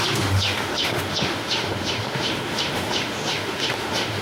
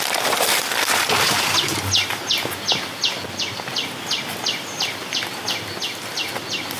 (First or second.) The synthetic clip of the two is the first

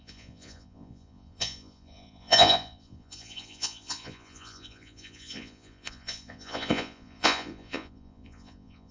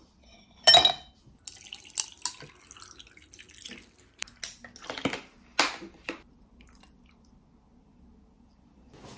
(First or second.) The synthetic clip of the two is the first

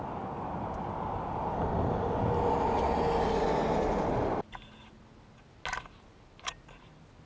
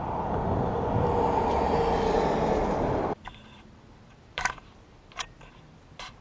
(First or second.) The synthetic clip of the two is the second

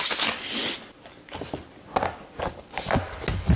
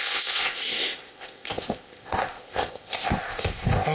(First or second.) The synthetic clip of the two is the second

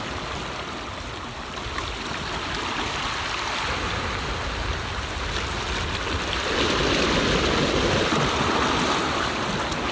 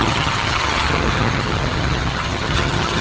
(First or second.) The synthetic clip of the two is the second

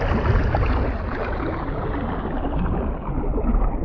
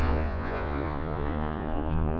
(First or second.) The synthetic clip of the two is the second